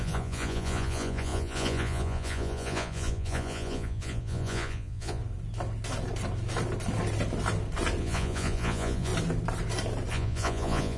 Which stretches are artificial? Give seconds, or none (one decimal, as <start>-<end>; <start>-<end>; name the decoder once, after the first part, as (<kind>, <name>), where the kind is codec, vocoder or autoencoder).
0.0-5.2 (vocoder, Vocos); 8.0-9.1; 10.1-11.0